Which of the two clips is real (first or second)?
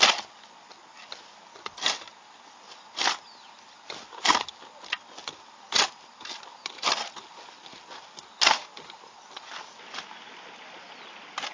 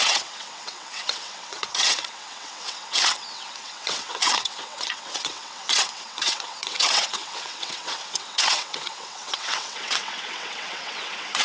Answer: first